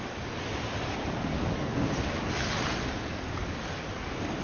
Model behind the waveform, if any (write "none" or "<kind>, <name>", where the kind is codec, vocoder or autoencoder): none